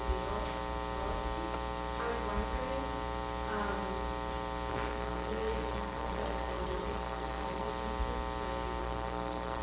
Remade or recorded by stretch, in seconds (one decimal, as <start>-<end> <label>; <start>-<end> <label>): 0.0-4.7 recorded; 4.7-7.7 remade; 7.7-8.8 recorded; 8.8-9.6 remade